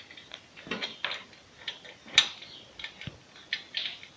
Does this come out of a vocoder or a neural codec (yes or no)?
no